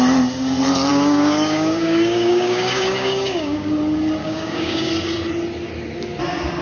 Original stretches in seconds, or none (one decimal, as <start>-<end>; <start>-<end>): 0.0-0.9; 3.7-4.2; 4.9-6.6